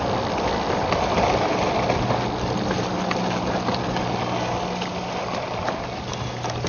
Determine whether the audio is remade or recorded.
recorded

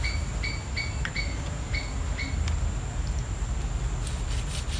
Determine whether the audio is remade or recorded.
recorded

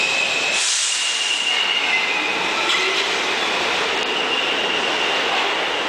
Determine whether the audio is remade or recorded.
recorded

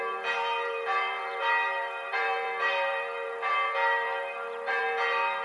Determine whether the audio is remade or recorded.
remade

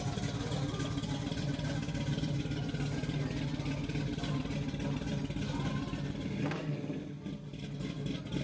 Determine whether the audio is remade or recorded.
recorded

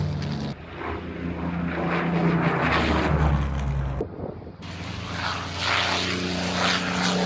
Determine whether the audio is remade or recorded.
recorded